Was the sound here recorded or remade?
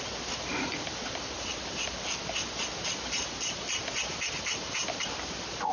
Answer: recorded